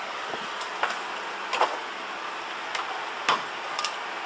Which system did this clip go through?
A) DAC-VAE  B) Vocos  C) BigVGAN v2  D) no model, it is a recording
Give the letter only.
D